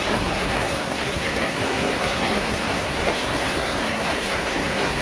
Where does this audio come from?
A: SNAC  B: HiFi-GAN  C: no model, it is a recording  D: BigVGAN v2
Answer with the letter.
A